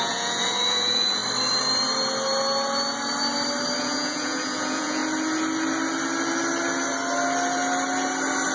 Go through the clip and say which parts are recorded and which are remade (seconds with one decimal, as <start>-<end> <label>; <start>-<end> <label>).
0.0-1.2 remade; 1.2-3.8 recorded; 3.8-5.0 remade; 5.0-8.5 recorded